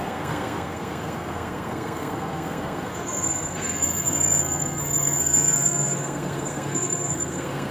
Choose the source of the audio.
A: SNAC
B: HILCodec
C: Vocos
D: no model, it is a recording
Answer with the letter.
A